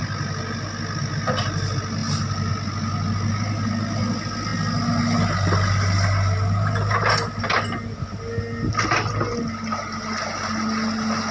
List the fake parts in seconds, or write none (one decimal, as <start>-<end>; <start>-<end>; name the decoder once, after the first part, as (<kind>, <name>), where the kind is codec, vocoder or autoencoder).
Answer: none